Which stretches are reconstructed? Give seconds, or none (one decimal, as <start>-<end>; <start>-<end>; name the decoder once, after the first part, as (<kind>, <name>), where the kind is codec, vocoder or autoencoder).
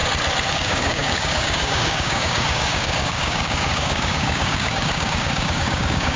0.5-6.2 (codec, DAC)